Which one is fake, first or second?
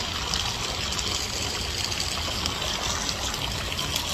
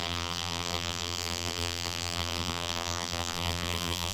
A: second